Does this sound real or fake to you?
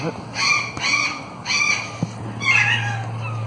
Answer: real